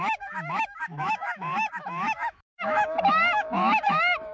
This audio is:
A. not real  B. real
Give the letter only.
A